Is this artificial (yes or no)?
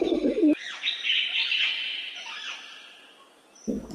yes